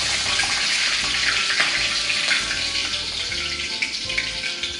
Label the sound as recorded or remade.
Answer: recorded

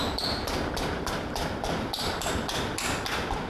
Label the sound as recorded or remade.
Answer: recorded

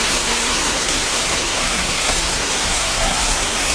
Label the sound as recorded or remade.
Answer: remade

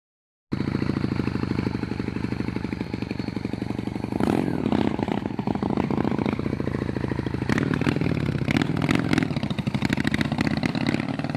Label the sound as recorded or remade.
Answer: recorded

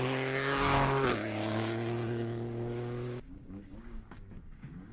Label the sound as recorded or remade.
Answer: remade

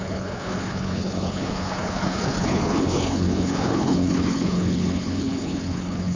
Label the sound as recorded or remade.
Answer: remade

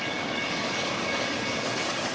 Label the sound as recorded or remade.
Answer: remade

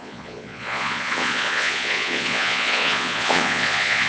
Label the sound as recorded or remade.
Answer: remade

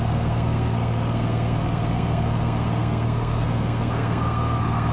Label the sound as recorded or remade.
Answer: remade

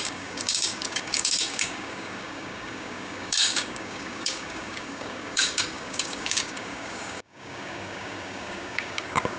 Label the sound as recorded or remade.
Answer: remade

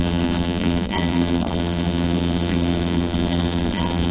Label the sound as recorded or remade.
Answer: remade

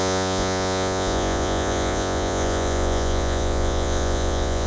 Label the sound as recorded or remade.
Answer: remade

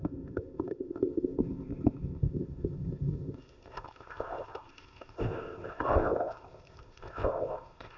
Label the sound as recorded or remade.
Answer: remade